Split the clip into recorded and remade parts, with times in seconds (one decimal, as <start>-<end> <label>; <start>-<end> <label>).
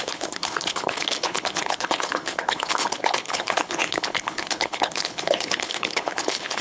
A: 0.0-6.6 remade